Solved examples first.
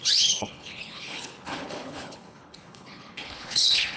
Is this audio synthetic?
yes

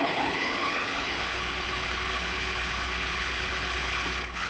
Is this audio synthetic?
yes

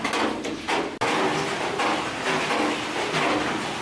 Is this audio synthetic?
no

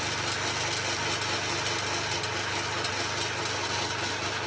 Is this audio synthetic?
no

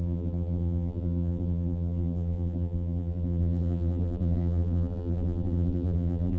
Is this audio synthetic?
yes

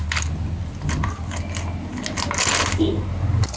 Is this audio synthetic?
no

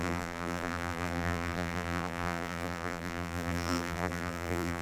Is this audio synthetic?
yes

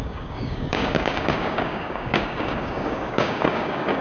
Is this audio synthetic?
yes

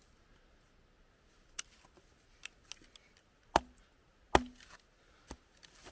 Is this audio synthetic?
no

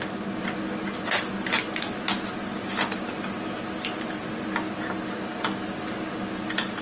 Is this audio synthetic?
no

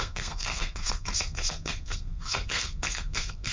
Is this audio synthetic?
yes